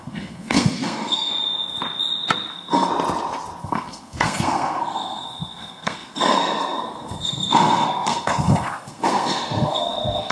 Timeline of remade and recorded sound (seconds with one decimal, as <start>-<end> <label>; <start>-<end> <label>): 0.0-1.3 remade; 1.3-2.5 recorded; 2.5-2.9 remade; 2.9-3.6 recorded; 3.6-10.3 remade